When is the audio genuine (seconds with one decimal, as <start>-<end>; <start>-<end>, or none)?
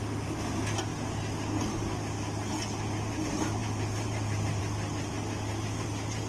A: 0.0-6.3